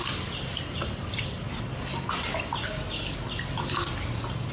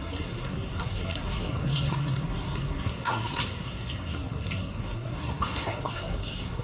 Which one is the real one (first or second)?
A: first